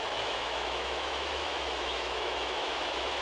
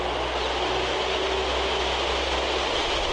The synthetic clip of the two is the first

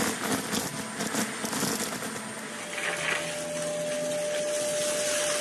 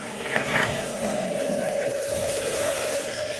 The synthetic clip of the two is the second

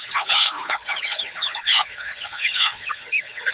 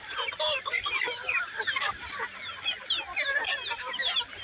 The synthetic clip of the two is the first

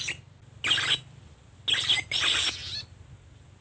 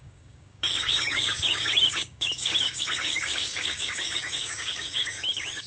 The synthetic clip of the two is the second